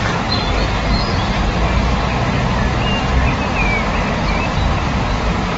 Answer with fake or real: real